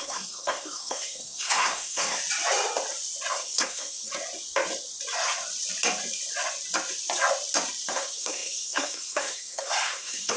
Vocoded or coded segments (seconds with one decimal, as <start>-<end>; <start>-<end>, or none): 0.0-2.2; 3.3-4.1; 7.9-10.4